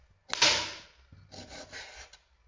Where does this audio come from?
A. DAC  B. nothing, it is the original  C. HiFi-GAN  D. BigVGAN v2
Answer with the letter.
B